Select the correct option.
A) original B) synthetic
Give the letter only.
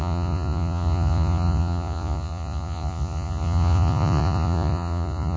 B